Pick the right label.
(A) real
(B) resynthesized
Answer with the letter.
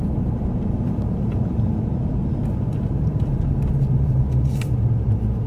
A